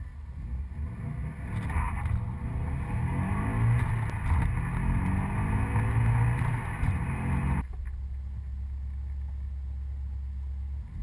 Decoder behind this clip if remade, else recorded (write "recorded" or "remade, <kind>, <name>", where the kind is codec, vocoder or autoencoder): recorded